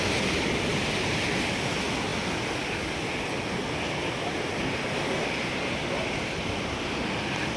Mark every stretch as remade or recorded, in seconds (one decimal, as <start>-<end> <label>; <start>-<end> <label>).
0.0-0.7 recorded; 0.7-1.7 remade; 1.7-7.6 recorded